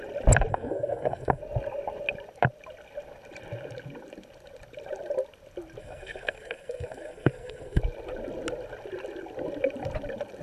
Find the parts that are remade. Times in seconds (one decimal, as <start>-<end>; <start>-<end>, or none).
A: 0.5-1.4; 5.8-7.8